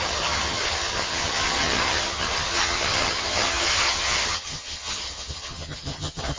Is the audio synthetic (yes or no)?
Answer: yes